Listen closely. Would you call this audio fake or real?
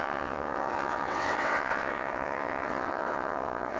fake